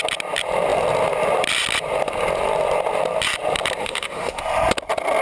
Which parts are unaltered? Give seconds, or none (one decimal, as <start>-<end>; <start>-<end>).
0.0-3.8; 4.4-5.2